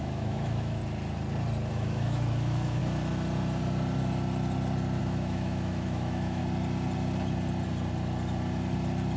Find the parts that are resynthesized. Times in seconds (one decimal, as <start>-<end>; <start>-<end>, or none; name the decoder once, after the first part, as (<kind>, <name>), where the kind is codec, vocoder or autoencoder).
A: 0.0-0.8 (autoencoder, DAC-VAE); 1.7-2.8; 5.0-6.4